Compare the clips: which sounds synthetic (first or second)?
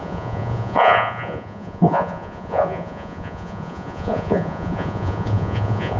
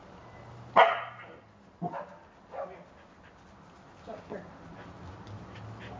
first